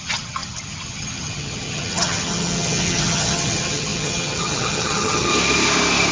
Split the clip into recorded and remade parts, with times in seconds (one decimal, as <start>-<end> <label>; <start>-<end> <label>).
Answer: 0.0-5.3 remade; 5.3-6.1 recorded

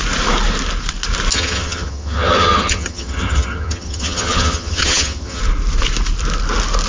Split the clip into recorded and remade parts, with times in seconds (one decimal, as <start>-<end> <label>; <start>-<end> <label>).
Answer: 0.0-1.3 recorded; 1.3-5.4 remade; 5.4-6.9 recorded

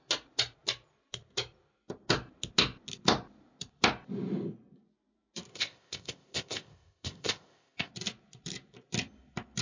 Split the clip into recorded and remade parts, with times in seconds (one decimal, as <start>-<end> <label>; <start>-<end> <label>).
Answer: 0.0-5.5 recorded; 5.5-7.9 remade; 7.9-9.6 recorded

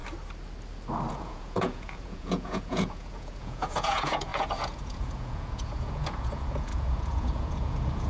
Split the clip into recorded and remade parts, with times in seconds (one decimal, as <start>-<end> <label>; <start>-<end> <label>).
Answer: 0.0-1.1 recorded; 1.1-8.1 remade

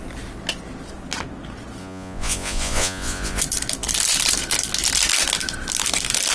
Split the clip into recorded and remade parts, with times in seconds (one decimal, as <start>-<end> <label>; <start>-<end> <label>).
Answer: 0.0-1.8 recorded; 1.8-3.4 remade; 3.4-6.3 recorded